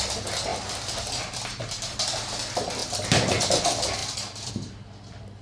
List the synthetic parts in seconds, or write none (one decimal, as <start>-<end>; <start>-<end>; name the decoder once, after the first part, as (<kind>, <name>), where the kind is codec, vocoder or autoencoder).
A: 4.0-4.5 (vocoder, BigVGAN v2)